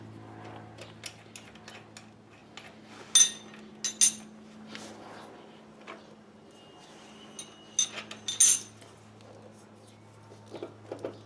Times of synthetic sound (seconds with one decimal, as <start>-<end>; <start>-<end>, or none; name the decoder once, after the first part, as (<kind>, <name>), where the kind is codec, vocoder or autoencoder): none